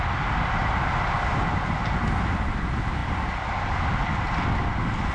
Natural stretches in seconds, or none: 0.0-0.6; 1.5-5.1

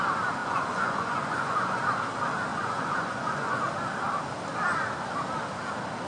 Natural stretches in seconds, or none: 0.0-0.4; 1.8-2.5; 3.6-6.1

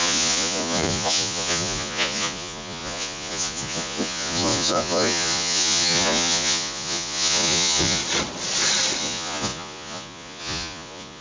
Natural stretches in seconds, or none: 8.0-9.0